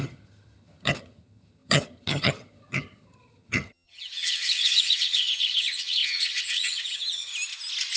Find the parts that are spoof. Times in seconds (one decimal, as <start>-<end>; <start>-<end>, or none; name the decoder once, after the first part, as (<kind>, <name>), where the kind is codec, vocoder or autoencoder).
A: 0.0-7.3 (vocoder, HiFi-GAN)